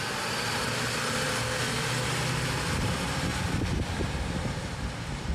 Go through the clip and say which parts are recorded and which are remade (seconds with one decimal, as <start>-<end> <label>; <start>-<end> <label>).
0.0-5.3 recorded

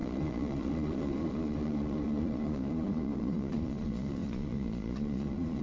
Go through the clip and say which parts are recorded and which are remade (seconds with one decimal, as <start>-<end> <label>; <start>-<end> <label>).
0.0-5.6 remade